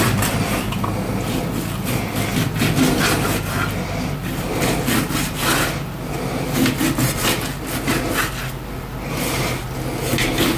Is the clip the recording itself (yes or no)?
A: yes